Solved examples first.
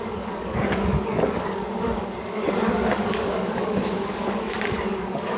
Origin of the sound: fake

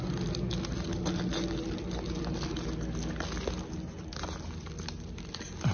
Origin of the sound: real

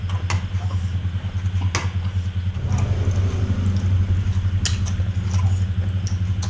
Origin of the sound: real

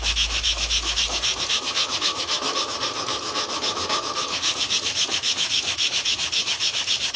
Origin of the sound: fake